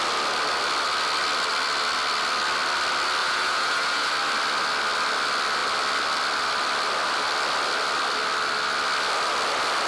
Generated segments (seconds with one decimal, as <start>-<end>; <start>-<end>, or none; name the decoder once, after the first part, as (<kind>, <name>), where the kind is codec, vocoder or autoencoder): 3.2-4.1 (vocoder, Vocos)